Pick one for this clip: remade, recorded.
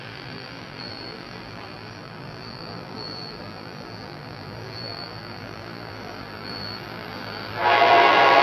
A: remade